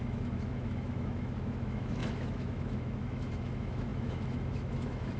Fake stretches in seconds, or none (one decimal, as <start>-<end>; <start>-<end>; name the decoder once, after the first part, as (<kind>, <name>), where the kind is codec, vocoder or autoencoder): 0.0-5.2 (autoencoder, DAC-VAE)